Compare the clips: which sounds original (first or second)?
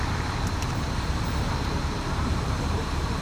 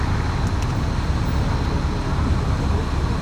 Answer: second